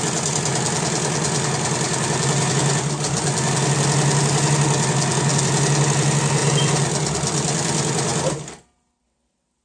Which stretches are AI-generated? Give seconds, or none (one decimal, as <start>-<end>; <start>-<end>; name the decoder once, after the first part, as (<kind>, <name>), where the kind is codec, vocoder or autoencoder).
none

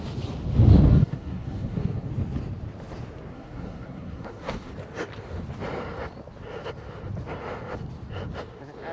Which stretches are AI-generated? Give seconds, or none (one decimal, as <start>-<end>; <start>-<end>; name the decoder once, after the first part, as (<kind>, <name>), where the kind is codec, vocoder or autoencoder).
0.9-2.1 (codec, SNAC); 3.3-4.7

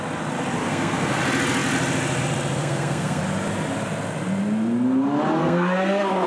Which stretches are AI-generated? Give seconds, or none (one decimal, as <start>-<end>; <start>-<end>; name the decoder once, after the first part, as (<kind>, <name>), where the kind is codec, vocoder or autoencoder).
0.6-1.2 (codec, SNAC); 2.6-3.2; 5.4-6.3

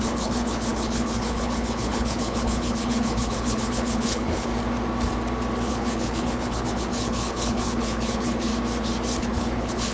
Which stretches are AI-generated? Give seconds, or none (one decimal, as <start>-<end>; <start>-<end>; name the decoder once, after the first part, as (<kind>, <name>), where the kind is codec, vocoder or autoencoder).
0.0-4.5 (codec, HILCodec); 5.7-8.5; 9.2-9.9

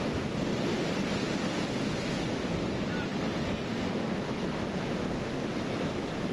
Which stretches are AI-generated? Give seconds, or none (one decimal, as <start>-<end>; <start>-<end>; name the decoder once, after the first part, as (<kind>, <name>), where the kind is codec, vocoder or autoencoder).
none

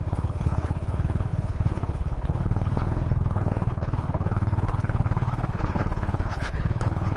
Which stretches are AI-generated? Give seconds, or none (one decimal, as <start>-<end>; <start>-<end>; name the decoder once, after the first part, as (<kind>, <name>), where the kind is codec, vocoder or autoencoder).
0.0-7.2 (codec, HILCodec)

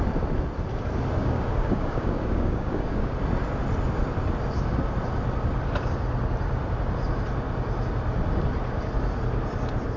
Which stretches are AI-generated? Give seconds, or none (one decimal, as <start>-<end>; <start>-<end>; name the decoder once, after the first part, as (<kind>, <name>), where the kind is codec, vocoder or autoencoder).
1.2-3.1 (codec, DAC)